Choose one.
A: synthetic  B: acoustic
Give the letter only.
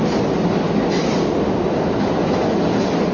B